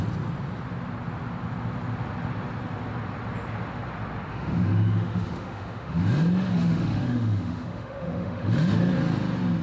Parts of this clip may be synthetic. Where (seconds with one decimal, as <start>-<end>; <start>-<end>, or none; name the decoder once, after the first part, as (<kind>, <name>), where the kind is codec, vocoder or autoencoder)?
4.3-6.1 (autoencoder, DAC-VAE); 6.5-8.9